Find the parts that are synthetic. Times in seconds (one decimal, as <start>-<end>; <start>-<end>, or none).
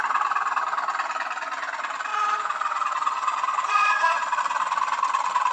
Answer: 2.1-4.4